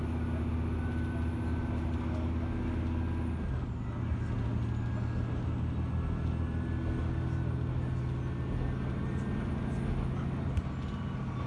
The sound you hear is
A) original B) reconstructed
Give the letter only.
A